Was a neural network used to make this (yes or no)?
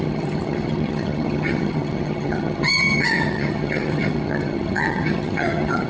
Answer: yes